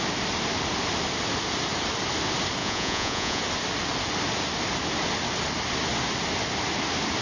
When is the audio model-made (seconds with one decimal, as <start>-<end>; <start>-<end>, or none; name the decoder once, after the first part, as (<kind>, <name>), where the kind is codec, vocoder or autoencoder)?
2.6-3.4 (vocoder, Vocos)